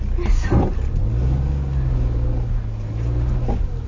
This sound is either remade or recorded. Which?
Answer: recorded